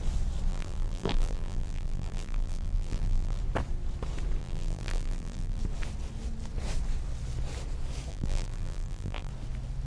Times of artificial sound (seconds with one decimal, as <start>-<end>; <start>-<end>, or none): 0.5-3.4; 4.4-5.6; 8.1-9.3